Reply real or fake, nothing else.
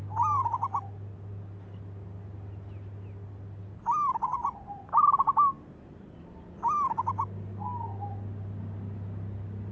real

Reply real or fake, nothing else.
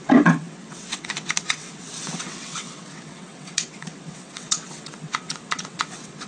fake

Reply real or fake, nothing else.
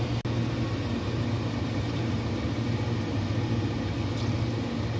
real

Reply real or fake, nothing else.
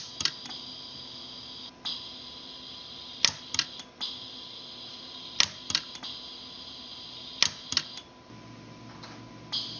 real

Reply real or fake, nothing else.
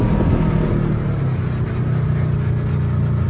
real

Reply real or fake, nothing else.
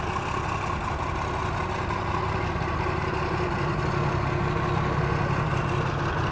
real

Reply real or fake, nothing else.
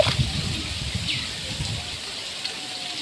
real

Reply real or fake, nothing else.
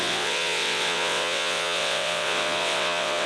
fake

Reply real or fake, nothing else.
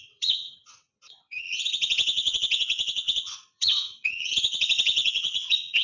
fake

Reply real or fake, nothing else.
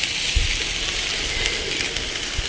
real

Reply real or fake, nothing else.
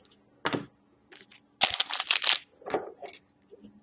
real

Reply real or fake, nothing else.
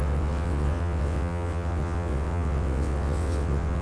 fake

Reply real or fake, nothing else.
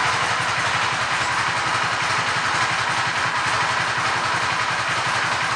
real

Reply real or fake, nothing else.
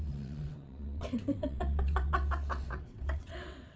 fake